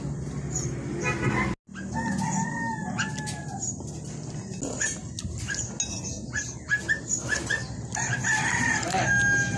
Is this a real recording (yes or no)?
yes